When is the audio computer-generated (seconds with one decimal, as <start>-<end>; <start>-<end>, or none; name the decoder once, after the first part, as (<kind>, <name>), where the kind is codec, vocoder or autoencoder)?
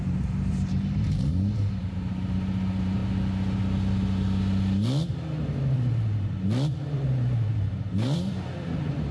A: 0.0-3.0 (vocoder, BigVGAN v2); 6.8-9.1